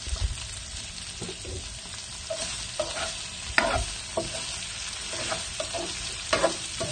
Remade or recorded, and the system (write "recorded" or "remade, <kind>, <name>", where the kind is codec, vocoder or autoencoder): recorded